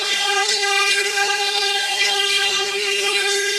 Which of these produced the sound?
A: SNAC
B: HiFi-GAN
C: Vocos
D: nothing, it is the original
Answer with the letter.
A